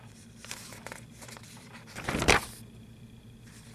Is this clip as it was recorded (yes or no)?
no